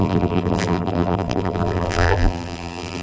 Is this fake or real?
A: fake